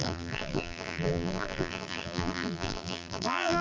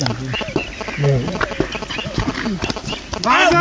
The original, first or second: second